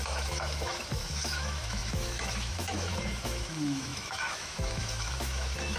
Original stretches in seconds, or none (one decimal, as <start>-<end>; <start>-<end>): none